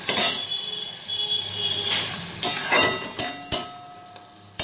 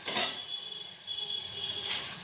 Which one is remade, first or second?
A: second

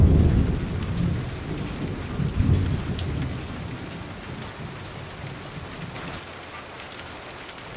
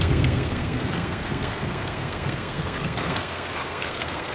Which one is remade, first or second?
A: second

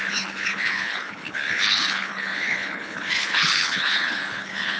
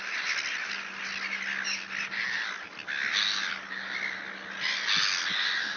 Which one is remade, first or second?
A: first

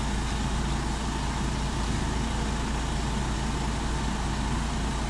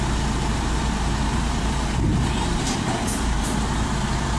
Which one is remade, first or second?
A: second